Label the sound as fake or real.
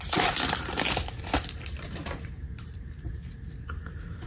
fake